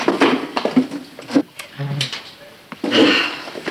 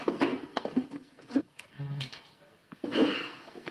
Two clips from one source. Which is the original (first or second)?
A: first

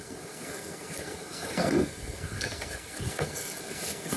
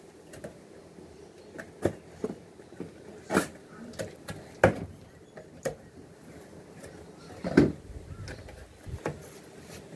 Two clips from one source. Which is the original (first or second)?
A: second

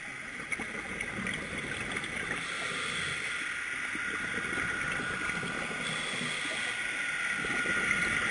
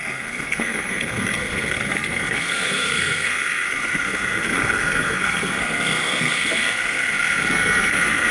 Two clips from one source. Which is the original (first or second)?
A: first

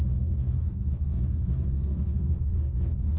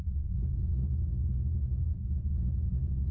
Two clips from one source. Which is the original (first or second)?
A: second